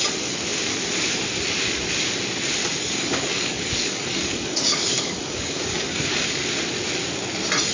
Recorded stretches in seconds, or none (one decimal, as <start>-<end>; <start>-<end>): 0.0-2.8; 6.4-7.7